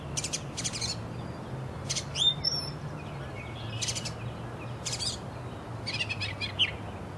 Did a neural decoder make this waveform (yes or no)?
no